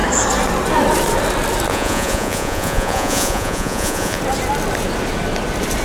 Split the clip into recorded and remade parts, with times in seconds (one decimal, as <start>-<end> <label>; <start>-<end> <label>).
0.0-1.7 recorded; 1.7-4.2 remade; 4.2-5.8 recorded